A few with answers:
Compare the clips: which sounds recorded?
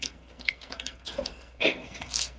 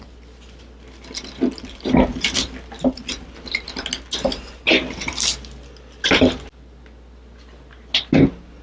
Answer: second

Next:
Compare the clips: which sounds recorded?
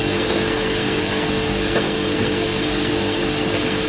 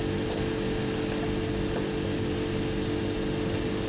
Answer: second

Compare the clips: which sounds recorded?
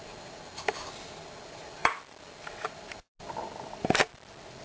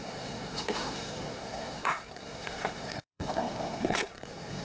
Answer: first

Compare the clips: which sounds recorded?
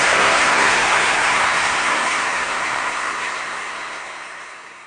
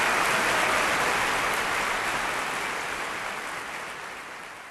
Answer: second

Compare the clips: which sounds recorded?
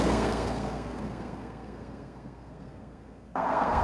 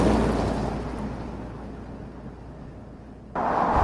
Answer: second